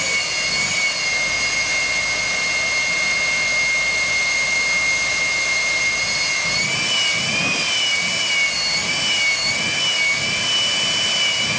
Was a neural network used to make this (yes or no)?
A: no